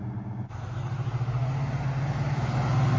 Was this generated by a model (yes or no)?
no